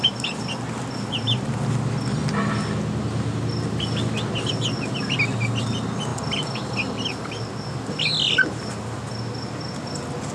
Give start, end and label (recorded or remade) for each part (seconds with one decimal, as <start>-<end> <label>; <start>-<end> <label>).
0.0-10.3 recorded